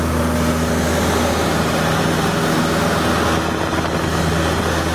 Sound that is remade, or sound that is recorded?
recorded